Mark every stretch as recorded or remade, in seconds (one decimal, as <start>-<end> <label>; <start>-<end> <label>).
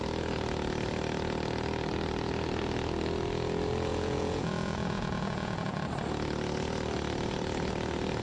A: 0.0-3.9 recorded; 3.9-5.8 remade; 5.8-8.2 recorded